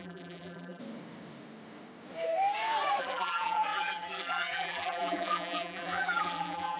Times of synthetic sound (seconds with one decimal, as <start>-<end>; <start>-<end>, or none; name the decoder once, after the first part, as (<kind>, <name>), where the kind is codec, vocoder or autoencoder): 0.0-0.8 (vocoder, BigVGAN v2); 3.0-6.8

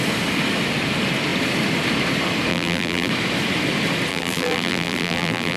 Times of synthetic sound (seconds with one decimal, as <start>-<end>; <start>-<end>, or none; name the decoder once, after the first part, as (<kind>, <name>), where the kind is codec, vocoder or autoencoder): 2.5-3.1 (vocoder, BigVGAN v2); 4.1-5.6